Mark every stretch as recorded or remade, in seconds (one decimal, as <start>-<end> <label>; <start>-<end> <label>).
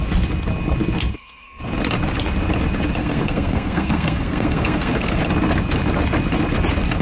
0.0-1.1 recorded; 1.1-1.6 remade; 1.6-3.0 recorded; 3.0-5.2 remade; 5.2-7.0 recorded